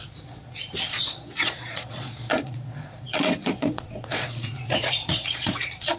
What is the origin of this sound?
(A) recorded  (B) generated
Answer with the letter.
B